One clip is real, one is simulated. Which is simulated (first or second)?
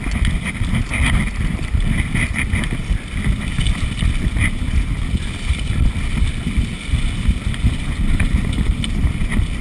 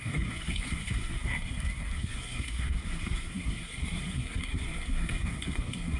second